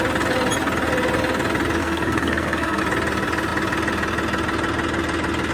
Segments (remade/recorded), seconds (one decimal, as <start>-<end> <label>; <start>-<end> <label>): 0.0-1.8 recorded; 1.8-2.8 remade; 2.8-5.5 recorded